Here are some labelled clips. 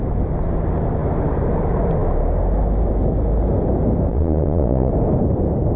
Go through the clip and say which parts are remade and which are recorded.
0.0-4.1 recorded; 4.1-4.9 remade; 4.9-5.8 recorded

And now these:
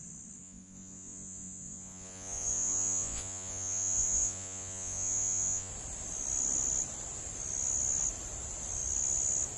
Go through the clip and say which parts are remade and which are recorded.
0.0-0.4 recorded; 0.4-5.7 remade; 5.7-9.6 recorded

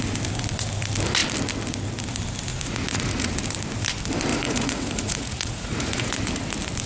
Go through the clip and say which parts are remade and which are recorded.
0.0-2.5 recorded; 2.5-3.3 remade; 3.3-4.3 recorded; 4.3-6.1 remade; 6.1-6.9 recorded

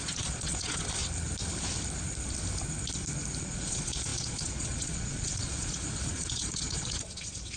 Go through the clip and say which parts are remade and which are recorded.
0.0-1.0 remade; 1.0-3.4 recorded; 3.4-7.6 remade